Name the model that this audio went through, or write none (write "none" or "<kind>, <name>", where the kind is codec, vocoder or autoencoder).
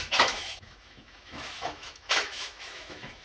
autoencoder, DAC-VAE